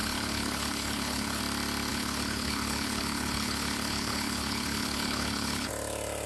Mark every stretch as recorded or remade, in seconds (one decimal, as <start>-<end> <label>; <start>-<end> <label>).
0.0-1.4 remade; 1.4-1.9 recorded; 1.9-5.7 remade; 5.7-6.3 recorded